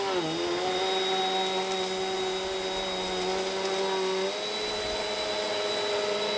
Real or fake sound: real